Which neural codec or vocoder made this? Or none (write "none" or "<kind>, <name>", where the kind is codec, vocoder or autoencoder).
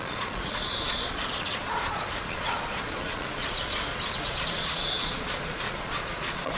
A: vocoder, Vocos